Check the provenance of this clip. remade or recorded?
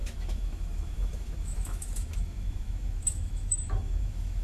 remade